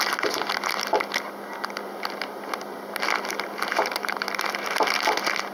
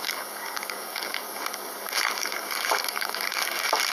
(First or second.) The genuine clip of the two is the first